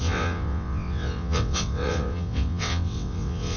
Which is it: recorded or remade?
remade